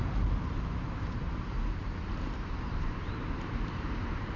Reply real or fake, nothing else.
fake